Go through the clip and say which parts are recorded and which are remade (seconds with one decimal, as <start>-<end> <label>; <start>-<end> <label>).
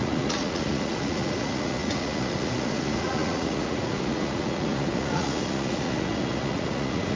0.0-7.2 remade